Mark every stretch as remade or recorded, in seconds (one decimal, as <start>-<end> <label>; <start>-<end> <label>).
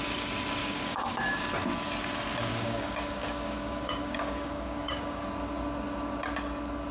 0.0-0.6 recorded; 0.6-1.4 remade; 1.4-2.5 recorded; 2.5-5.3 remade; 5.3-6.9 recorded